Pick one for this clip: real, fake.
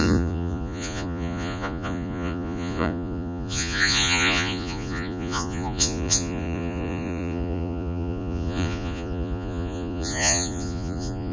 fake